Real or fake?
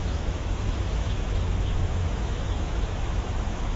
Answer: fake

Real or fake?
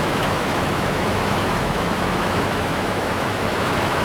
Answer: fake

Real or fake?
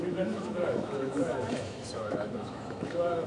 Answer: fake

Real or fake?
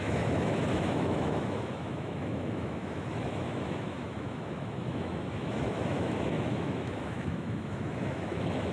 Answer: fake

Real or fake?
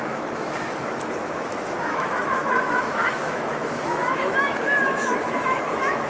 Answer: fake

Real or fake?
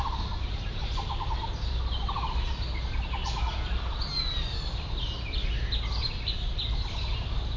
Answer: real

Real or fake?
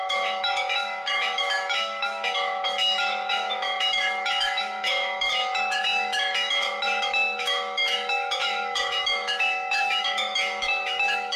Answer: fake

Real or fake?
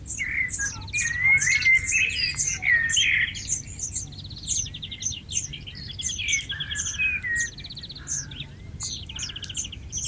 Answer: real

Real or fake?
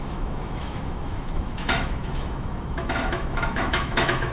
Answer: fake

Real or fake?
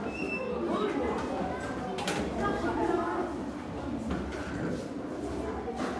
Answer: real